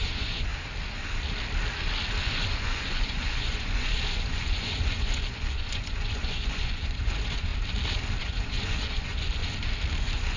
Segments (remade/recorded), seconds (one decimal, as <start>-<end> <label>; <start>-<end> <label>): 0.0-0.5 remade; 0.5-2.2 recorded; 2.2-7.5 remade; 7.5-8.2 recorded; 8.2-9.4 remade; 9.4-10.0 recorded; 10.0-10.4 remade